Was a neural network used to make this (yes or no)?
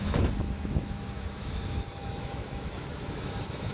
yes